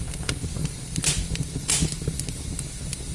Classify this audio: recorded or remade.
recorded